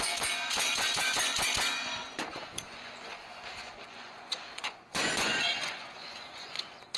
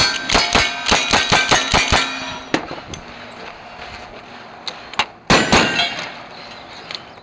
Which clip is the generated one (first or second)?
first